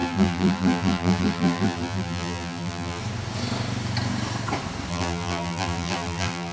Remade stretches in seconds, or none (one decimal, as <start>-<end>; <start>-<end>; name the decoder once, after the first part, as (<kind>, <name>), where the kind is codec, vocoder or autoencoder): 0.0-3.0 (vocoder, BigVGAN v2); 4.9-6.5